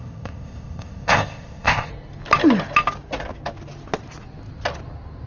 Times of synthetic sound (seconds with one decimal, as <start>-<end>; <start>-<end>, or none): 0.0-1.9